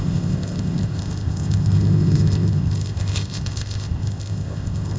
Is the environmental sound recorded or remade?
remade